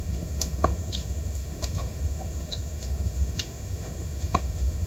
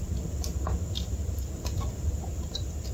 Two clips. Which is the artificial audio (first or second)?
first